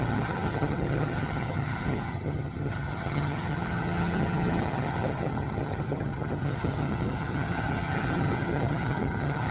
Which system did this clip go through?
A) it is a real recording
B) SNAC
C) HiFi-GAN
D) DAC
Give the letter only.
C